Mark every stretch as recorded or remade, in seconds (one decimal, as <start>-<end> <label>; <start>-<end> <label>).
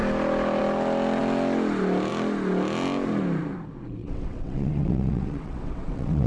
0.0-4.0 recorded; 4.0-6.3 remade